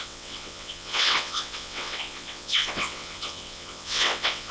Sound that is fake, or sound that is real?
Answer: fake